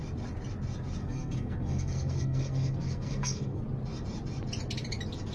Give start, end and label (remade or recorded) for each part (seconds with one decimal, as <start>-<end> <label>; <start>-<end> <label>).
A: 0.0-1.0 recorded; 1.0-3.6 remade; 3.6-5.3 recorded